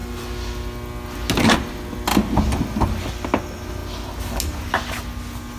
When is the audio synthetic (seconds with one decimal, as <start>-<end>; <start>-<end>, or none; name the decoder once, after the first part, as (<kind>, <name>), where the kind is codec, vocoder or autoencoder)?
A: none

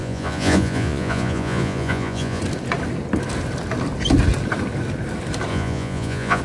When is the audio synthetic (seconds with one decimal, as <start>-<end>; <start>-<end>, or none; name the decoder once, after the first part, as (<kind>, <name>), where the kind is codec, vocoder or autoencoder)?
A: 0.0-2.4 (vocoder, Vocos); 5.5-6.4